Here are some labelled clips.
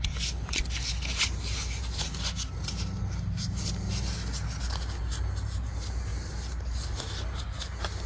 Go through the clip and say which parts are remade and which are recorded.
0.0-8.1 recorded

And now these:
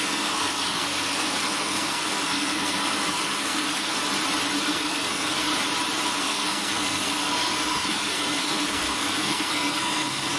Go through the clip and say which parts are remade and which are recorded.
0.0-4.0 remade; 4.0-4.6 recorded; 4.6-5.5 remade; 5.5-6.2 recorded; 6.2-10.4 remade